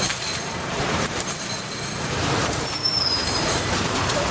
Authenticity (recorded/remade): remade